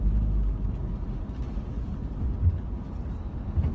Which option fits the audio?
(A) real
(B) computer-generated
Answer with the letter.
A